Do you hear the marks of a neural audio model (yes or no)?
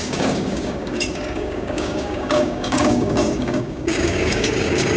yes